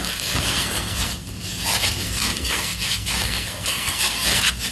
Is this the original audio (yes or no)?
no